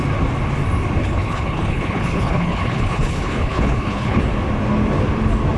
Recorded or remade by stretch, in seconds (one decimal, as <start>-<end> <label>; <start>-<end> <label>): 0.0-1.0 recorded; 1.0-4.2 remade; 4.2-5.6 recorded